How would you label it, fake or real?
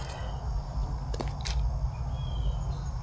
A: real